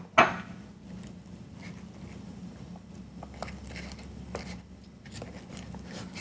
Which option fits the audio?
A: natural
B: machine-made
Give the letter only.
A